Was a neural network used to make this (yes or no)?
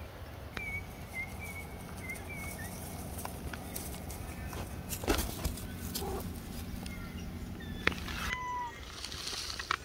no